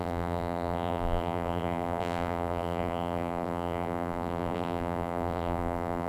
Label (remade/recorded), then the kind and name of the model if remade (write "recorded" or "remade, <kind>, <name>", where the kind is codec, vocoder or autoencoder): remade, vocoder, BigVGAN v2